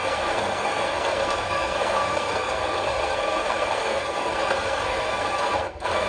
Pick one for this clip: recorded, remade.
remade